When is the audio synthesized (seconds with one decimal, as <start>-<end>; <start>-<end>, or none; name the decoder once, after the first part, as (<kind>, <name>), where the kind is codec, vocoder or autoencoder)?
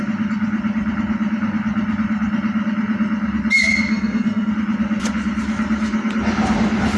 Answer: 3.9-4.5 (codec, SNAC)